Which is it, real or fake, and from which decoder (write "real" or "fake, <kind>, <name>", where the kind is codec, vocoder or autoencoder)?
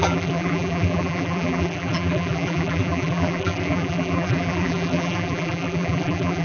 fake, vocoder, BigVGAN v2